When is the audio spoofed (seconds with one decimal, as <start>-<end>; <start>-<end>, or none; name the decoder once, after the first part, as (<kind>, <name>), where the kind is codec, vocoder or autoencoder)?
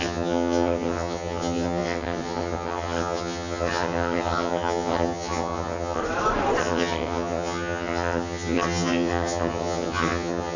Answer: 0.0-6.0 (vocoder, HiFi-GAN); 6.6-10.6